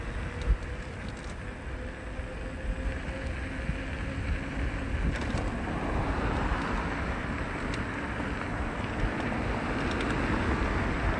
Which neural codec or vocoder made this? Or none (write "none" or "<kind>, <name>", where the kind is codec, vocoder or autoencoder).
none